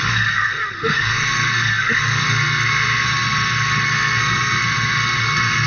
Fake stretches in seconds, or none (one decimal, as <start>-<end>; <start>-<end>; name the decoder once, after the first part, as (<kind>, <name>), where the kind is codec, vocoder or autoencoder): 0.0-5.7 (codec, SNAC)